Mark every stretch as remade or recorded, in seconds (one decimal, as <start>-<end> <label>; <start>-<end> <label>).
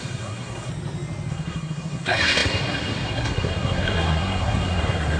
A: 0.0-0.7 remade; 0.7-1.3 recorded; 1.3-5.2 remade